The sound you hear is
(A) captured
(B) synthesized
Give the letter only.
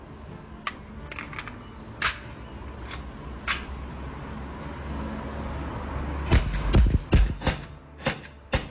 A